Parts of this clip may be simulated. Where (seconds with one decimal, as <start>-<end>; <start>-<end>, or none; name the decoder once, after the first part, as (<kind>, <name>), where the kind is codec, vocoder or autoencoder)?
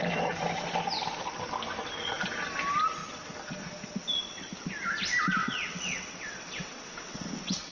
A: 5.4-7.7 (vocoder, WaveNeXt)